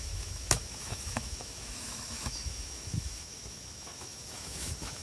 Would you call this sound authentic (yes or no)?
no